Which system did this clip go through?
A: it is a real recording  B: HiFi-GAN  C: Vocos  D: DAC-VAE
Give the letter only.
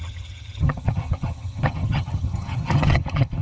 B